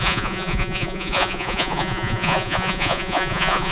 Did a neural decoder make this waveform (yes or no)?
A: yes